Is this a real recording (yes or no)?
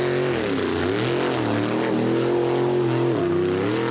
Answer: yes